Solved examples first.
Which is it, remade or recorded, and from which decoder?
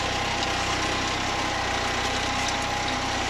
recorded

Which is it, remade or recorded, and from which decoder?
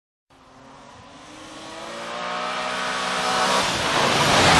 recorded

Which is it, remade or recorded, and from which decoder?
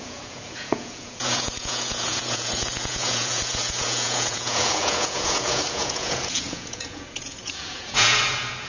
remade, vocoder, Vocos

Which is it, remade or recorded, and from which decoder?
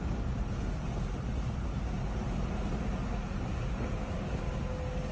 recorded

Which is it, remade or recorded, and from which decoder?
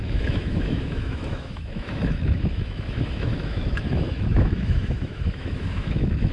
remade, autoencoder, DAC-VAE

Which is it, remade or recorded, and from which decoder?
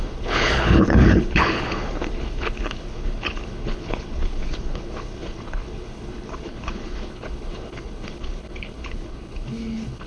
remade, codec, HILCodec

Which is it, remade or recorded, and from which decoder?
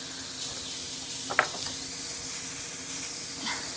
recorded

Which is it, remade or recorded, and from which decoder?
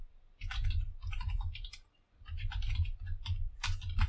remade, vocoder, BigVGAN v2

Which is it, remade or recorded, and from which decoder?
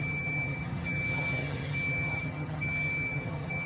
remade, vocoder, HiFi-GAN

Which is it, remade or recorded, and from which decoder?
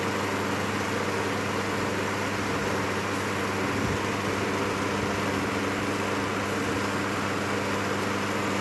recorded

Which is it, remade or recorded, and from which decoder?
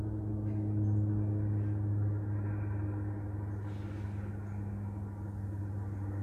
recorded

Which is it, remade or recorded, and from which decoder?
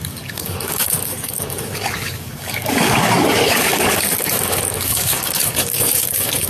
remade, codec, DAC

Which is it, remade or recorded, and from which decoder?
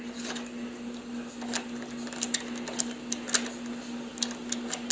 recorded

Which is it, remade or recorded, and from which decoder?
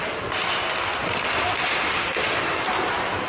recorded